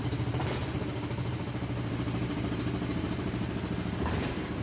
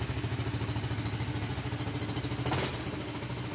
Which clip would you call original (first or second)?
second